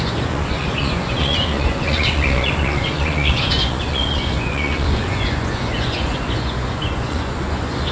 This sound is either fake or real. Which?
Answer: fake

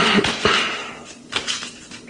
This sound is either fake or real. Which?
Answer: real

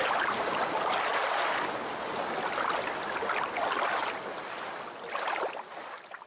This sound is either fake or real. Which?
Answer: real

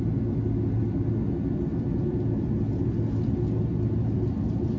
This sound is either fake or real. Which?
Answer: real